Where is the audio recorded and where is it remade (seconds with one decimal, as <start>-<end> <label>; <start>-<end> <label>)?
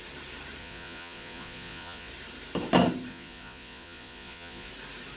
0.0-0.6 recorded; 0.6-2.1 remade; 2.1-3.1 recorded; 3.1-4.7 remade; 4.7-5.2 recorded